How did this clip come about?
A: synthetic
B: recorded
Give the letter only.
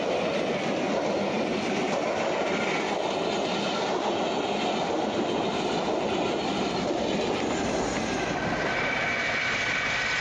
B